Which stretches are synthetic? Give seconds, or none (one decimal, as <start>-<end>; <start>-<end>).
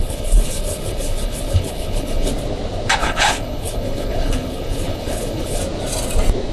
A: 0.0-2.3; 3.0-5.6